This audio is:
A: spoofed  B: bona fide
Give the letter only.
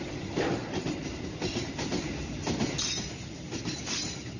B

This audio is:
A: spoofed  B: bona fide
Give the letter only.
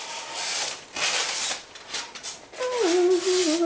B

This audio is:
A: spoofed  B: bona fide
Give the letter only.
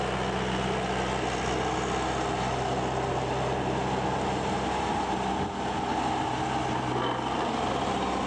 B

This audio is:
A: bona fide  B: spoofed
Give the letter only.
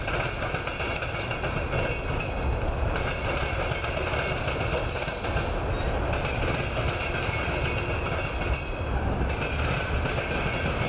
A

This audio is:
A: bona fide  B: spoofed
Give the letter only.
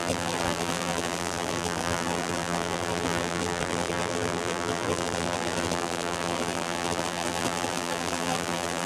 B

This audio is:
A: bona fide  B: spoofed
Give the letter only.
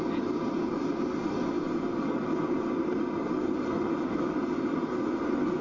A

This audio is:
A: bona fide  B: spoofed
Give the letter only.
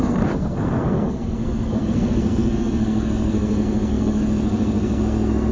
B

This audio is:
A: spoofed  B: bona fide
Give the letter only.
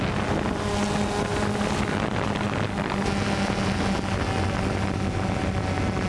B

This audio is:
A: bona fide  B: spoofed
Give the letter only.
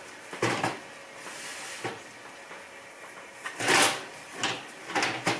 A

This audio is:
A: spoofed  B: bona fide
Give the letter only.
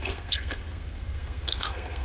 A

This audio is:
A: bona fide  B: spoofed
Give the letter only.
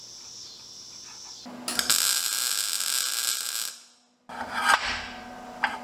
A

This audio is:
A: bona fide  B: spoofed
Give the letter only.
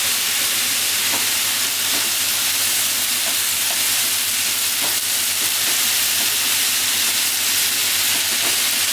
A